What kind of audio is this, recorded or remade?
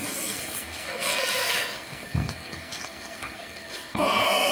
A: remade